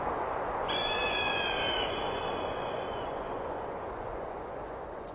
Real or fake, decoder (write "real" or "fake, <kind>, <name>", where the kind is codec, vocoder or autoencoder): fake, vocoder, Vocos